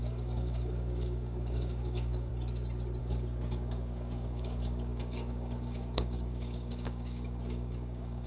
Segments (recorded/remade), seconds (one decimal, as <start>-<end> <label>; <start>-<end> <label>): 0.0-2.3 remade; 2.3-3.0 recorded; 3.0-8.3 remade